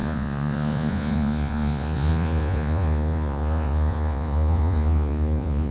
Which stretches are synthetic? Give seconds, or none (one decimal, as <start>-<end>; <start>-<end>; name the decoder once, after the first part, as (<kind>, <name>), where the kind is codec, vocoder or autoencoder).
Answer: 0.0-5.7 (vocoder, Vocos)